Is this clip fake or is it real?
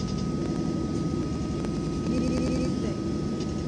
real